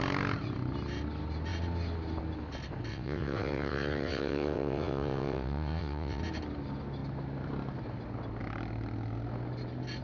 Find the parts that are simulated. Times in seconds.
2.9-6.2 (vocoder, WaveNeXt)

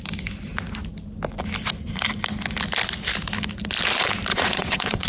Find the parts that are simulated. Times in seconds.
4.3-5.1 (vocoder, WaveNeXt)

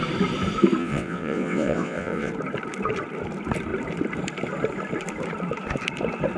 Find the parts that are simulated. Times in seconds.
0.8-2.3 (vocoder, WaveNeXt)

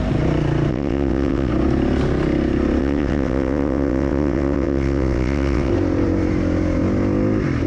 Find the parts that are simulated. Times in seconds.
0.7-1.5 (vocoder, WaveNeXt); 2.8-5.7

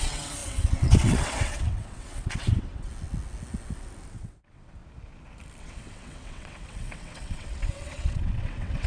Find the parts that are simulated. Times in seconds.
0.0-2.9 (vocoder, WaveNeXt); 4.1-4.8; 5.6-8.9

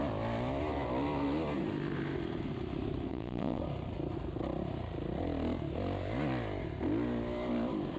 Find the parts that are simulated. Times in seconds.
3.1-3.6 (vocoder, WaveNeXt)

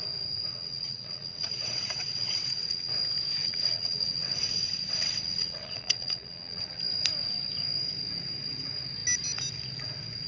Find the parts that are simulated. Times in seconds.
0.5-2.9 (vocoder, WaveNeXt); 3.4-6.8